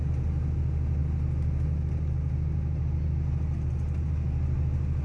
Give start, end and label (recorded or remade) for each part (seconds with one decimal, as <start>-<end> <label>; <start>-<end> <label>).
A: 0.0-5.0 recorded